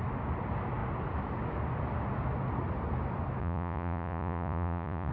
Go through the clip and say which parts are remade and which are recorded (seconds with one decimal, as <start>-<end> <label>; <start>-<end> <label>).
0.0-3.4 recorded; 3.4-5.1 remade